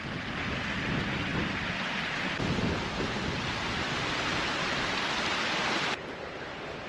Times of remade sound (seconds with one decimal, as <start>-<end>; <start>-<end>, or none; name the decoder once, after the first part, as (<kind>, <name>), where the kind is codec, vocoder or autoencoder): none